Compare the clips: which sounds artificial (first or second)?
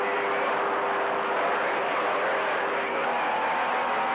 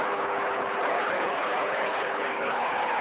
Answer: second